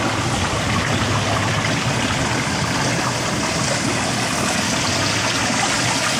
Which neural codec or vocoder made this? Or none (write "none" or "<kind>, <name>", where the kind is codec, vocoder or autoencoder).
none